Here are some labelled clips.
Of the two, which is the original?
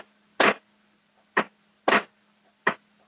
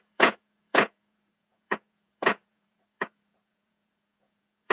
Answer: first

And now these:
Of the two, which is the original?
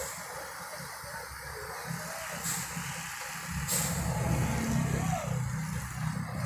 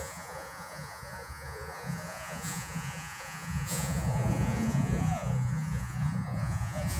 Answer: first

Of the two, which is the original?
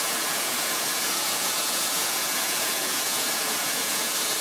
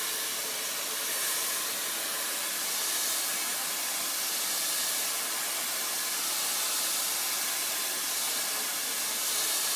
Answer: second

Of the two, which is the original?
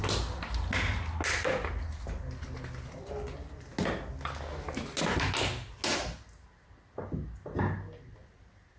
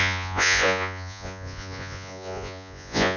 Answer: first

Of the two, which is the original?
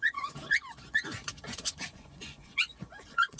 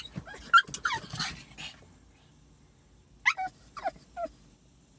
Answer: second